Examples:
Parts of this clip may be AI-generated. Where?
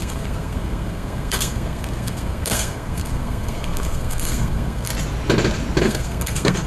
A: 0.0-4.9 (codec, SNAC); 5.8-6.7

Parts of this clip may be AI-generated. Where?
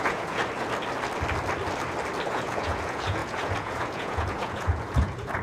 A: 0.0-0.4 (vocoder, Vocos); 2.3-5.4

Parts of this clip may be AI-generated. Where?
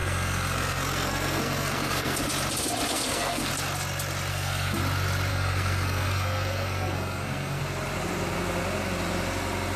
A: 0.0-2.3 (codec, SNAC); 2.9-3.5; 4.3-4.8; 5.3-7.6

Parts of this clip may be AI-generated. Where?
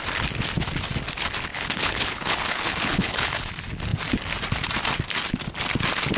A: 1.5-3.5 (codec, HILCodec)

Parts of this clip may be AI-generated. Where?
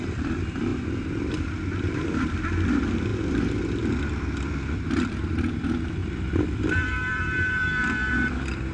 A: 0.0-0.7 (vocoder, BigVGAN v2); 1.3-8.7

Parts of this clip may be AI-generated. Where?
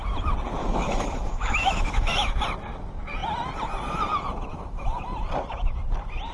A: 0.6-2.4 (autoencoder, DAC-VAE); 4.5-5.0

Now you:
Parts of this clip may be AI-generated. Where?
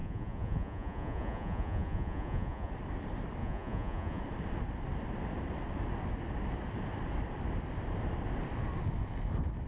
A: 0.0-2.7 (vocoder, Vocos); 3.4-4.2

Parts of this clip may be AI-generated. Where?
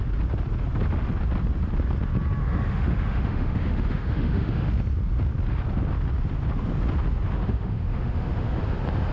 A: 2.4-4.7 (autoencoder, DAC-VAE); 7.4-8.6